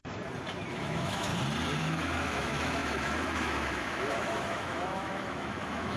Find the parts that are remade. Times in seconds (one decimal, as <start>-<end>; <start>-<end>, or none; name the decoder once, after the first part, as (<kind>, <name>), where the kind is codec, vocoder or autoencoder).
0.7-1.3 (autoencoder, DAC-VAE); 1.8-6.0